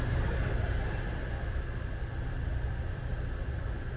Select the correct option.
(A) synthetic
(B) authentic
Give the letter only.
B